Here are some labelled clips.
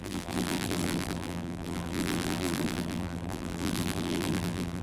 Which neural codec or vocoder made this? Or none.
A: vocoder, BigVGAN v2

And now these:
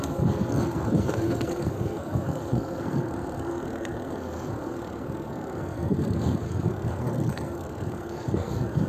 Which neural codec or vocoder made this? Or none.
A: codec, SNAC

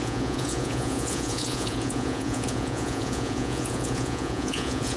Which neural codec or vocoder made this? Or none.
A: vocoder, Vocos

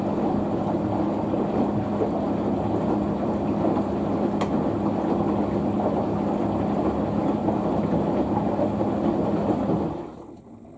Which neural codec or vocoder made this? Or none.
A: none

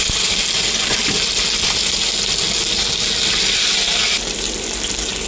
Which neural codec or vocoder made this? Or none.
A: none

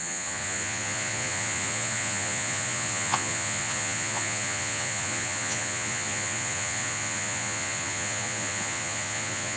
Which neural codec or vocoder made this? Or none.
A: vocoder, Vocos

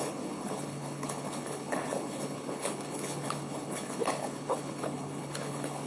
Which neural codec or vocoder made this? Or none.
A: codec, HILCodec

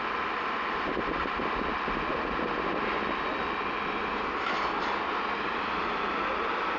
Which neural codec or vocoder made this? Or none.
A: none